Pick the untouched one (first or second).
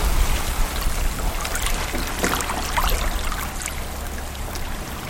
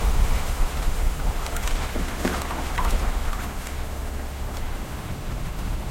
first